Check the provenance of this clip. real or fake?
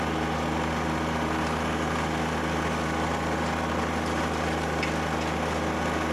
real